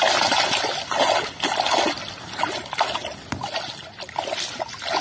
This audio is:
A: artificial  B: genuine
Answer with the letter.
B